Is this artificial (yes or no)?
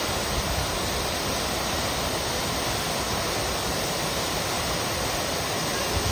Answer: no